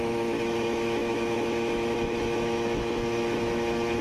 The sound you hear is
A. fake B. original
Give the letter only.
A